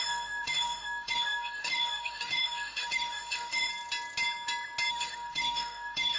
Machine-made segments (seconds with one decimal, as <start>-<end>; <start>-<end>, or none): 0.0-3.7; 4.9-6.2